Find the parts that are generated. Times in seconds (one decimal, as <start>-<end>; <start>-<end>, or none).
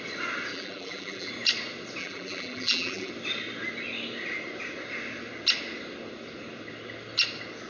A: 0.5-1.3; 2.0-3.1